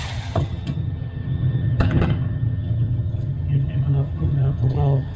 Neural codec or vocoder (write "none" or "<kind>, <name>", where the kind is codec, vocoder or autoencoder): vocoder, HiFi-GAN